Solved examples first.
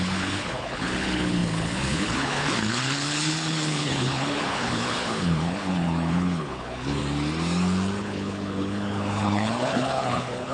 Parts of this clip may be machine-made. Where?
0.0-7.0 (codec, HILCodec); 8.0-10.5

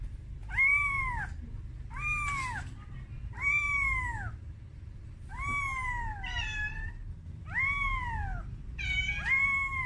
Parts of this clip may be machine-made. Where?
none